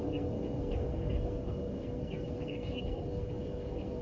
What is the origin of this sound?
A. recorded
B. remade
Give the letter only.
B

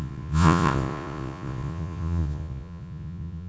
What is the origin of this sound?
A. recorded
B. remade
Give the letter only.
B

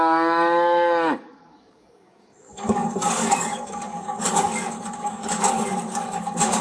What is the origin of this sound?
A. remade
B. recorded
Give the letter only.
A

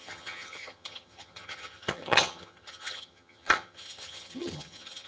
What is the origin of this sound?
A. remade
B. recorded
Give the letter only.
A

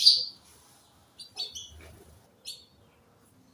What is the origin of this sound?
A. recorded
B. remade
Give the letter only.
A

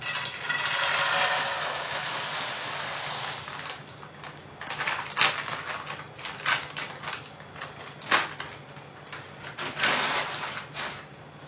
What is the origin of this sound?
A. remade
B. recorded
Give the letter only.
B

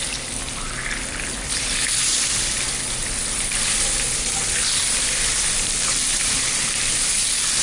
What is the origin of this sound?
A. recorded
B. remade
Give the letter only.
B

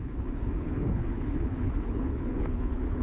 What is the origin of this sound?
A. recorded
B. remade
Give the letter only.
B